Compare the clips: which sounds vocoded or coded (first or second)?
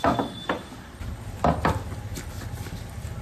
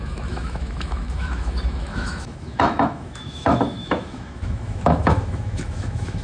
second